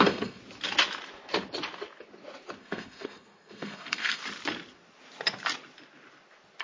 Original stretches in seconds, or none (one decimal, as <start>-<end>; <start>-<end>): 0.4-2.6; 4.2-6.6